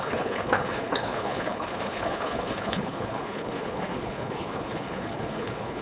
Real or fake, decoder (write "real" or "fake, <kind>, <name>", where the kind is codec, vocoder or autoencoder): fake, codec, HILCodec